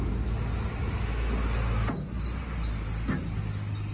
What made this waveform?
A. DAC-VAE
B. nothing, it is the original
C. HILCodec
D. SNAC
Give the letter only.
B